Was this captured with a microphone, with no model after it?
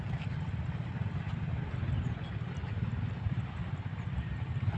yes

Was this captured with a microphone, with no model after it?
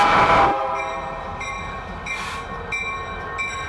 yes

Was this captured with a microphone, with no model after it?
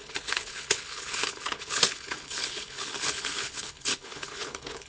no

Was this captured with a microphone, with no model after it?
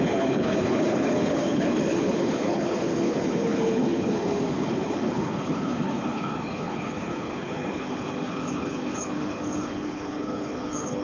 no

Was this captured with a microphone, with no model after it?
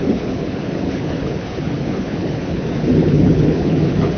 no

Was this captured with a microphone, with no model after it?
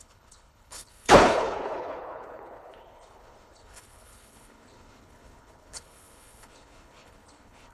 no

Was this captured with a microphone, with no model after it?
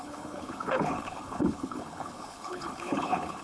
no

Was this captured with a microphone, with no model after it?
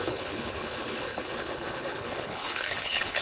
no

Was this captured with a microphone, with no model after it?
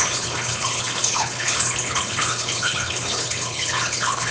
no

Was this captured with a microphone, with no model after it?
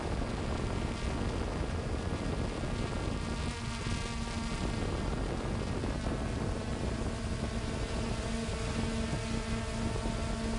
yes